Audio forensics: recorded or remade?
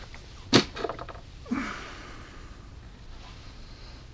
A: recorded